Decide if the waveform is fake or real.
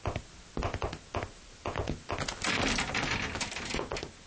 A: real